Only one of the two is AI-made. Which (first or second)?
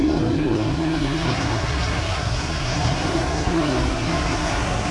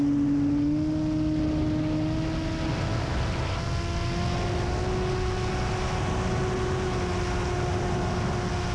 first